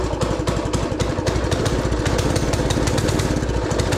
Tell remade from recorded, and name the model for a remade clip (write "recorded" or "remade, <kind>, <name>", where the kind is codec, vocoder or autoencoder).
recorded